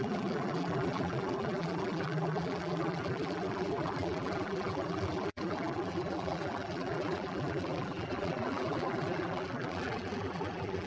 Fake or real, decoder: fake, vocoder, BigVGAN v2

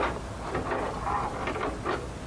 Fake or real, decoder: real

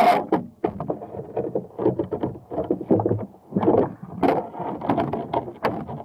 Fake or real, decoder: real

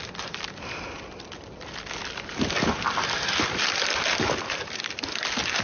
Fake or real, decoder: fake, vocoder, BigVGAN v2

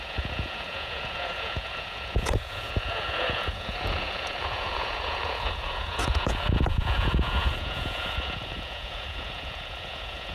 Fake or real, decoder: fake, vocoder, Vocos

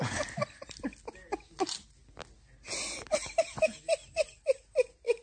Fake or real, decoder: real